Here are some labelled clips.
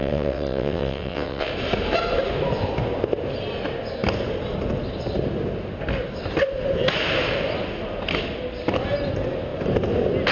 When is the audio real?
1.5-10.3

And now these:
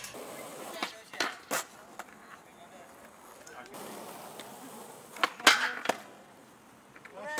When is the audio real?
0.0-6.4

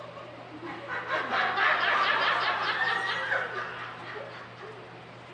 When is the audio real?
0.0-5.3

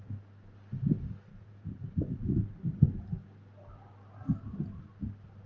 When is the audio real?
0.0-1.3; 1.9-5.5